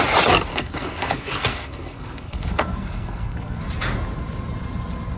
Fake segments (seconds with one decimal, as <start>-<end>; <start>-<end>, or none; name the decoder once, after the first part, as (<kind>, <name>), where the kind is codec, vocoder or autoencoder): 0.5-3.6 (codec, SNAC)

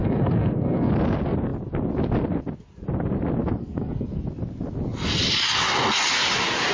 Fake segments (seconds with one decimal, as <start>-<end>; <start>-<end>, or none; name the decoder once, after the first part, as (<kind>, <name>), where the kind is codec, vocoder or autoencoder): 0.0-0.9 (codec, SNAC); 3.6-4.2

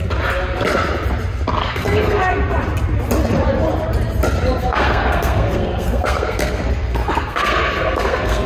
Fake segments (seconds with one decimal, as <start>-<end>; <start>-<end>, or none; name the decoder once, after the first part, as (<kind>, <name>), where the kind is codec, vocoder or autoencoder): 1.6-2.2 (codec, SNAC); 4.6-8.5

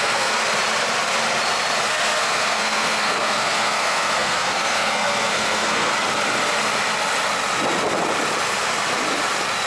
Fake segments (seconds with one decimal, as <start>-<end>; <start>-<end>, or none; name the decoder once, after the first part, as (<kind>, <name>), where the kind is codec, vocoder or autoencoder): 0.0-0.4 (codec, SNAC); 1.9-5.9

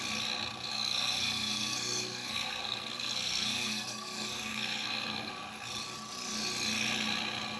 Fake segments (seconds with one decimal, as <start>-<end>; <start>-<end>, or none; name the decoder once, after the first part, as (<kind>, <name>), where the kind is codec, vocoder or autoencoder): 0.7-5.3 (codec, SNAC)

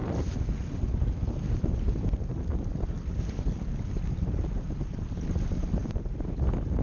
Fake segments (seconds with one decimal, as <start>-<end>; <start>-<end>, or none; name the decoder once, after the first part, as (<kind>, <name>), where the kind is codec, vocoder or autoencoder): none

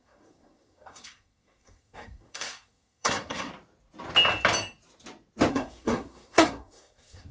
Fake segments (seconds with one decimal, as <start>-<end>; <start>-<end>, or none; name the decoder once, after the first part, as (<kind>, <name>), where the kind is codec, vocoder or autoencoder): 0.0-3.5 (codec, SNAC); 5.5-7.3